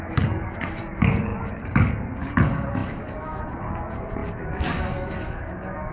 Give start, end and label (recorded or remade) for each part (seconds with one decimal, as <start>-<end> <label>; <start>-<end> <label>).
0.0-5.9 remade